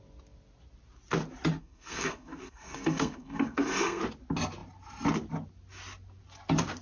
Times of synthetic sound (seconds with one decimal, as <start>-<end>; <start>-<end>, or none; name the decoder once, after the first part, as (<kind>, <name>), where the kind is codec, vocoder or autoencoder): 1.6-4.0 (codec, SNAC)